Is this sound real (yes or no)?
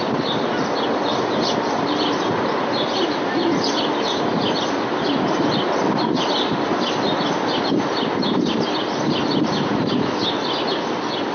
yes